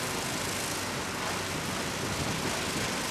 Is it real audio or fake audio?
real